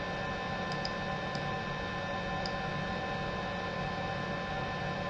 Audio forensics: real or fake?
real